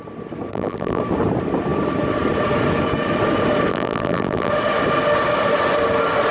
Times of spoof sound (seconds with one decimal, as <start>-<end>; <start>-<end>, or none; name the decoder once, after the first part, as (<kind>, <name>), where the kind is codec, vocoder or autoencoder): 0.5-1.0 (vocoder, BigVGAN v2); 3.7-4.5